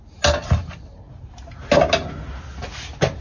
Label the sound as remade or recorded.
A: recorded